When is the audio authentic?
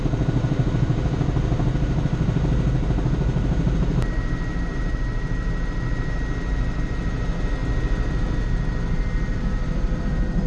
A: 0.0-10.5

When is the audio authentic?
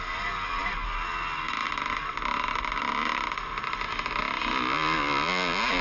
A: 0.0-5.8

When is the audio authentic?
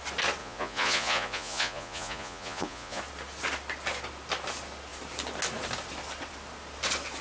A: 0.0-0.4; 3.0-7.2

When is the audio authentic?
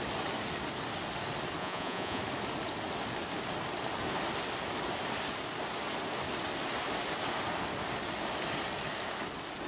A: 0.0-1.6; 2.2-9.7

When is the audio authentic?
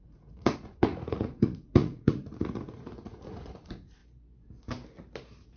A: 4.0-5.6